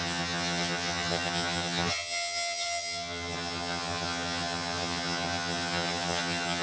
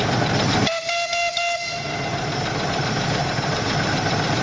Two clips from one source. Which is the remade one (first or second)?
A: first